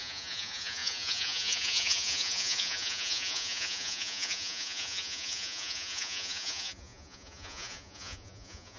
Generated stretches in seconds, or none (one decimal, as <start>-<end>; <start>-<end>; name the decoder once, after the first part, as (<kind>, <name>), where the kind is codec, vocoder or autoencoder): 0.0-8.8 (vocoder, Vocos)